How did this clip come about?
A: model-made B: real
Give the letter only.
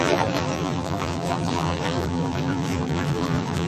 A